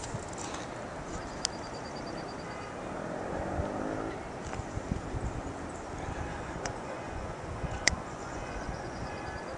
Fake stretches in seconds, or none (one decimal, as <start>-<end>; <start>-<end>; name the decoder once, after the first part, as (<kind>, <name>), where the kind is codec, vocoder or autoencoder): 6.3-9.2 (vocoder, Vocos)